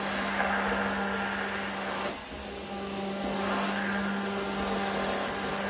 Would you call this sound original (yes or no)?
yes